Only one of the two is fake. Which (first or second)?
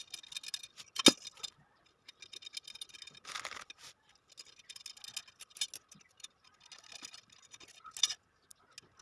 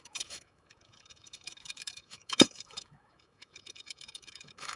second